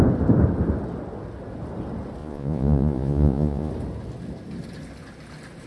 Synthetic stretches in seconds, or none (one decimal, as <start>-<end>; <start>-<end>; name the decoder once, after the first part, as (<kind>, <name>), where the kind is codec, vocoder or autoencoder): 2.2-3.7 (vocoder, Vocos)

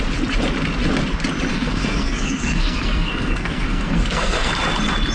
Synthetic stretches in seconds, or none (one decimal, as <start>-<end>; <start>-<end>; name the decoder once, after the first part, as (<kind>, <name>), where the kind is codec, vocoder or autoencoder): 1.5-4.5 (codec, SNAC)

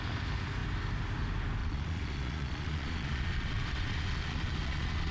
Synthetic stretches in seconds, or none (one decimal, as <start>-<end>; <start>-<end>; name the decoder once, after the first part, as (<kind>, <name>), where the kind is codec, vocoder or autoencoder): 1.6-5.1 (vocoder, Vocos)

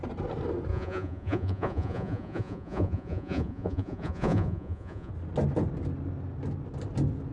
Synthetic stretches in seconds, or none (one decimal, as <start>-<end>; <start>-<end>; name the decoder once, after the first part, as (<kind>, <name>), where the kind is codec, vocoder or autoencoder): 0.7-5.1 (vocoder, Vocos)

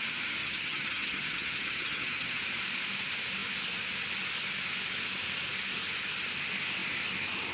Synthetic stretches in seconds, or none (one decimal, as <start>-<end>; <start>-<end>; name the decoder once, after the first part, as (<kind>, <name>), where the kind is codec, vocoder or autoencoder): 0.4-2.4 (vocoder, HiFi-GAN)